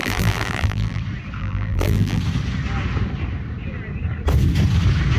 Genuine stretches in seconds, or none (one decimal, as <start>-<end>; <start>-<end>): 1.0-1.4; 2.2-5.2